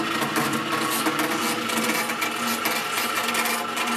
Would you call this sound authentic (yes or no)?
yes